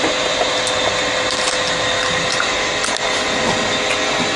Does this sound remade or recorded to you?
recorded